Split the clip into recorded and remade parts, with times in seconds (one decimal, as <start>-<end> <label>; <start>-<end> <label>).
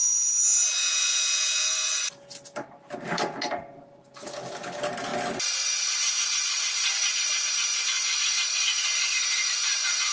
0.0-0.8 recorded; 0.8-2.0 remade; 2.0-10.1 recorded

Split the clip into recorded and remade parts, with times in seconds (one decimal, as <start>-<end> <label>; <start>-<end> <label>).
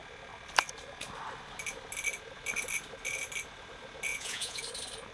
0.0-4.1 recorded; 4.1-4.6 remade; 4.6-5.1 recorded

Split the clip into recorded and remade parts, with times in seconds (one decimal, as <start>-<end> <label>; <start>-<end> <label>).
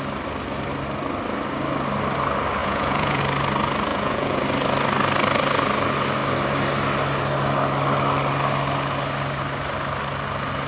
0.0-2.6 recorded; 2.6-3.2 remade; 3.2-3.9 recorded; 3.9-4.4 remade; 4.4-10.7 recorded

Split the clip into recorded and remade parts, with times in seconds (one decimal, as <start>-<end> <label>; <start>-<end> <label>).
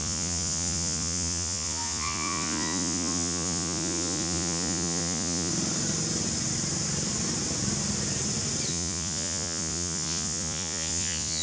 0.0-5.5 remade; 5.5-8.7 recorded; 8.7-11.4 remade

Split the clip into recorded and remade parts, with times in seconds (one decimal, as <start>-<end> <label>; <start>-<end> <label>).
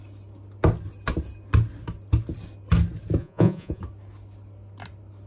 0.0-3.2 recorded; 3.2-3.8 remade; 3.8-5.3 recorded